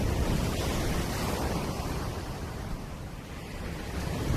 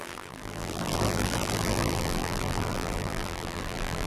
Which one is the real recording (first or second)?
first